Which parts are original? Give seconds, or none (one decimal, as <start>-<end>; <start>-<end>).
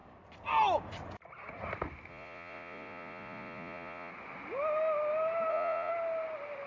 0.0-2.1; 4.1-5.5; 5.9-6.7